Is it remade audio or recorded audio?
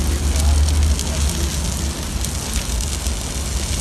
recorded